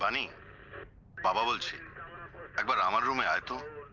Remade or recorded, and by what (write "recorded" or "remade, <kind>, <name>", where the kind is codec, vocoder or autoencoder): recorded